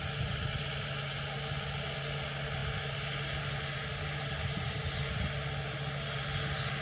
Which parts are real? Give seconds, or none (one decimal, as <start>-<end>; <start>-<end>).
0.0-3.9; 4.8-6.8